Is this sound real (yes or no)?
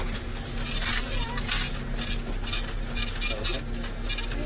yes